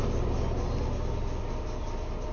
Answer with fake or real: real